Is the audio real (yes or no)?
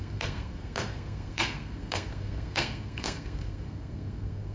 no